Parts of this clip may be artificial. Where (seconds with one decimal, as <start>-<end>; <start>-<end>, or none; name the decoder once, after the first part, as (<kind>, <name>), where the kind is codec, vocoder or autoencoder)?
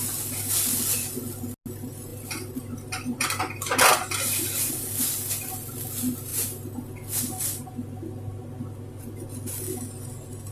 2.1-4.7 (vocoder, BigVGAN v2)